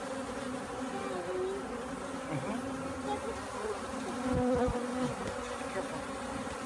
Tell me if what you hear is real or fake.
real